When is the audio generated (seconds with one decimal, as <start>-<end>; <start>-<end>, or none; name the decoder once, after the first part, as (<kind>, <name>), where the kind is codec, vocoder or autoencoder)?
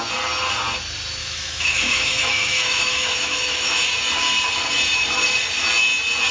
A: 1.2-3.8 (autoencoder, DAC-VAE)